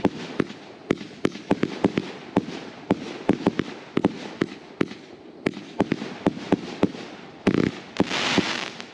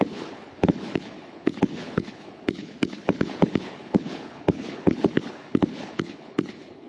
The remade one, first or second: second